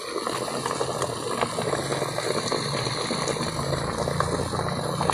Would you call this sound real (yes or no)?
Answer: yes